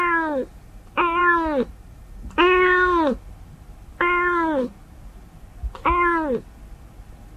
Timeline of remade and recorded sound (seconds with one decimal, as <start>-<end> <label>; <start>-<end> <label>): 0.0-7.4 recorded

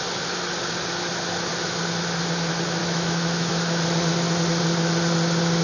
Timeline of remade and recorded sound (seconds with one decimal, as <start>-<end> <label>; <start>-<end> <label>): 0.0-2.8 recorded; 2.8-3.5 remade; 3.5-5.6 recorded

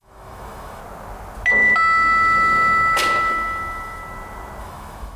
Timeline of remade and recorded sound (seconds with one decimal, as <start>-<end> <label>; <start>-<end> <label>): 0.0-0.8 remade; 0.8-3.2 recorded; 3.2-4.0 remade; 4.0-4.6 recorded; 4.6-5.2 remade

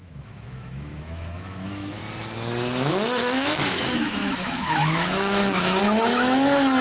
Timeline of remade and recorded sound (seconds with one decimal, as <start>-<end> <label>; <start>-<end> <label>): 0.0-2.0 remade; 2.0-2.9 recorded; 2.9-6.8 remade